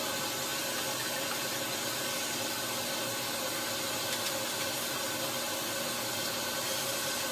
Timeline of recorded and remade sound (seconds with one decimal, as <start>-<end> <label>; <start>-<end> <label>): 0.0-7.3 recorded